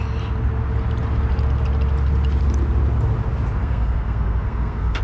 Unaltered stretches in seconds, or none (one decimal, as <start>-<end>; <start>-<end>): 0.0-3.6